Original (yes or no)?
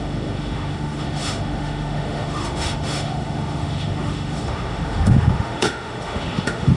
no